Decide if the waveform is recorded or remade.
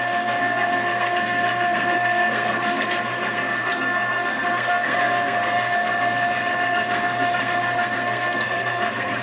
remade